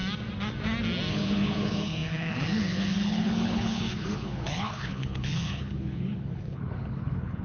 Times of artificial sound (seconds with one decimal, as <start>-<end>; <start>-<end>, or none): 1.1-7.4